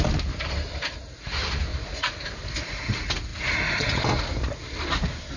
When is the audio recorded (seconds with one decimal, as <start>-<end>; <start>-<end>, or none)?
0.0-1.7; 2.8-3.3; 4.0-5.4